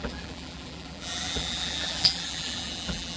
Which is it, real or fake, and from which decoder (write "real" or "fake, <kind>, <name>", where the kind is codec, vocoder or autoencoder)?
fake, vocoder, BigVGAN v2